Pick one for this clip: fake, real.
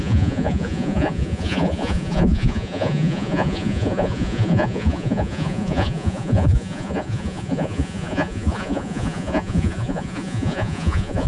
fake